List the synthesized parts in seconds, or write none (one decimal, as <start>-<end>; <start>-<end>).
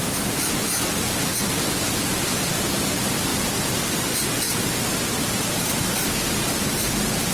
none